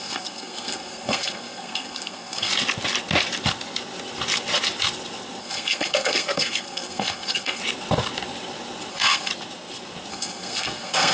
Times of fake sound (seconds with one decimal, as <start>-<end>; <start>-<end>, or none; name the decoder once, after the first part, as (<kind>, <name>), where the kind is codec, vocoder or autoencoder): 0.0-2.5 (codec, SNAC); 5.4-7.6; 8.9-9.3; 10.1-11.1